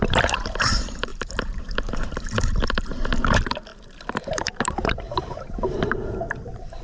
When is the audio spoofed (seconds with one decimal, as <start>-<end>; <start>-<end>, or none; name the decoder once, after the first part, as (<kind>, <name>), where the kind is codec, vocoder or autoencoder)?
0.0-3.7 (vocoder, BigVGAN v2); 4.2-6.8